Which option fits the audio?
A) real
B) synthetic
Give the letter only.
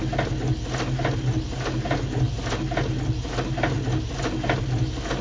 A